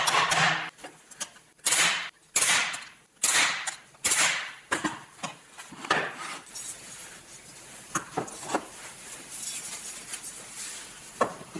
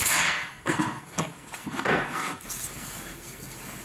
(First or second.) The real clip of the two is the first